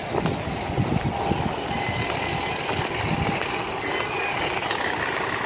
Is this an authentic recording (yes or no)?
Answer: yes